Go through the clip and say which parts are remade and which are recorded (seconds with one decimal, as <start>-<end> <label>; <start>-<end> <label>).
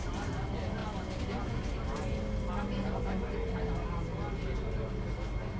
0.0-5.6 recorded